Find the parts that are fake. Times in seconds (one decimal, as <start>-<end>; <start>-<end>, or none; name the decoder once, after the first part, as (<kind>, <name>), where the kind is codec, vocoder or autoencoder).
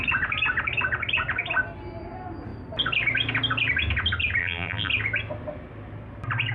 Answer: 4.4-4.9 (vocoder, BigVGAN v2)